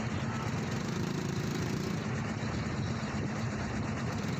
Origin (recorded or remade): remade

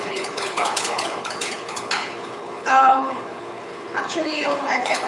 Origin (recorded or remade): remade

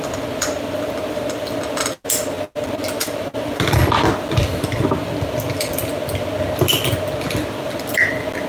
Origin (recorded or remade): recorded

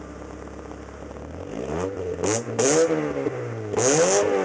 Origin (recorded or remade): recorded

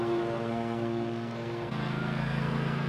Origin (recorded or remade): remade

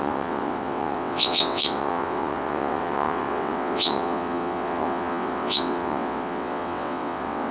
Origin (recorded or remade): remade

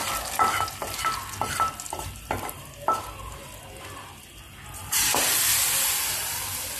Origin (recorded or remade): recorded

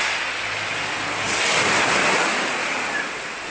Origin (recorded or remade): recorded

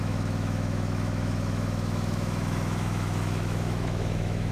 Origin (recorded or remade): remade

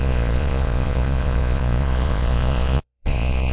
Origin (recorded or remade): remade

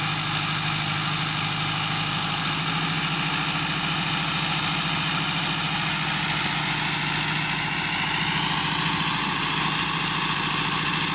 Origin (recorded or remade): recorded